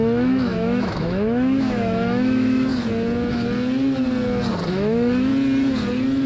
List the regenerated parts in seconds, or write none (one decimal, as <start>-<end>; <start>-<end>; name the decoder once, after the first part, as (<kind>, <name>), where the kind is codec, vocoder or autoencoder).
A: 0.0-2.7 (autoencoder, DAC-VAE); 4.7-5.3